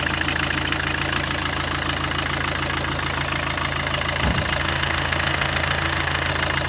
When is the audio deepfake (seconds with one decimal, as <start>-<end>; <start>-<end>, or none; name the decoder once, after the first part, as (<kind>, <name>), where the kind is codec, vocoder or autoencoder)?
4.6-6.3 (autoencoder, DAC-VAE)